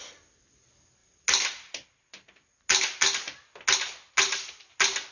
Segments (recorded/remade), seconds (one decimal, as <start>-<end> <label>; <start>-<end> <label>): 0.0-5.1 recorded